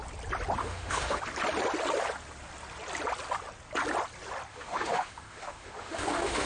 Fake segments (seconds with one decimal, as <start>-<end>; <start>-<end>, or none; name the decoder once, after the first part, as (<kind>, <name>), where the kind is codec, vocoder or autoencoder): 0.6-1.2 (autoencoder, DAC-VAE); 4.5-6.5